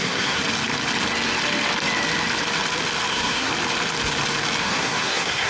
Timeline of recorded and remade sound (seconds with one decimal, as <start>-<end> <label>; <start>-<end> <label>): 0.0-0.4 remade; 0.4-3.1 recorded; 3.1-3.5 remade; 3.5-4.6 recorded; 4.6-5.5 remade